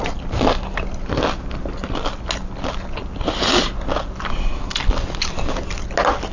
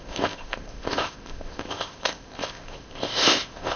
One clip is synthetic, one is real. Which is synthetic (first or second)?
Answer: second